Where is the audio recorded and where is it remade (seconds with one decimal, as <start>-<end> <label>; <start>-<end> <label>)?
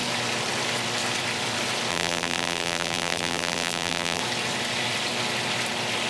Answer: 0.0-1.9 recorded; 1.9-4.2 remade; 4.2-6.1 recorded